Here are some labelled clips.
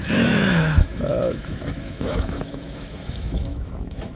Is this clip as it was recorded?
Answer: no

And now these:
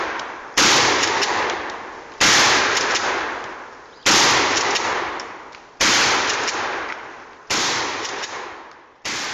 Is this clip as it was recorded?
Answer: yes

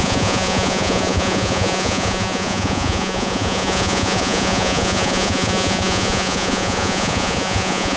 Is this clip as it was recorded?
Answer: no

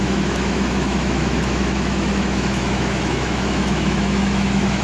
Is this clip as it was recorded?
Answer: no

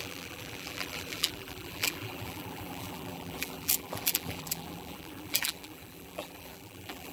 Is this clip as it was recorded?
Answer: no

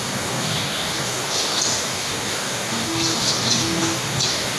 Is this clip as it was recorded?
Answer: no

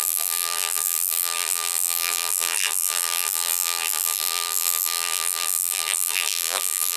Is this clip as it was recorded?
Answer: no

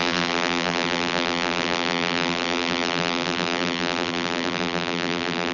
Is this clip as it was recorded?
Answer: no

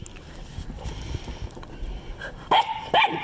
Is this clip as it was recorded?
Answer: yes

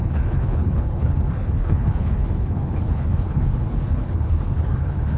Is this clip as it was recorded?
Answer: no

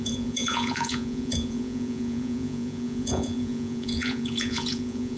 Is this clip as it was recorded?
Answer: no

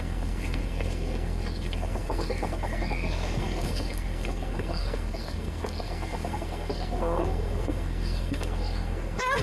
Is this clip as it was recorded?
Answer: no